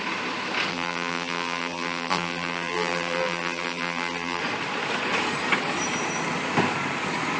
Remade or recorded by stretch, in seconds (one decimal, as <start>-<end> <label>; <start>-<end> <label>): 0.0-0.7 recorded; 0.7-4.4 remade; 4.4-7.4 recorded